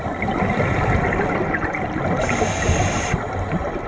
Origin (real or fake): real